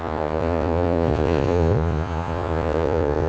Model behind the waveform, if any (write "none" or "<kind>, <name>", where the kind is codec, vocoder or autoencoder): vocoder, Vocos